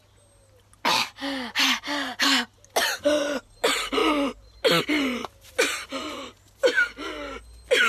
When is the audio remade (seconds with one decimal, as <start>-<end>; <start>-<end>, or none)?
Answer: none